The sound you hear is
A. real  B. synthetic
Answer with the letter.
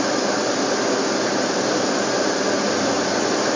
A